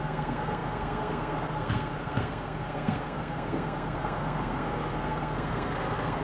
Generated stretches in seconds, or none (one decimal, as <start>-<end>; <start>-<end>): 0.0-6.2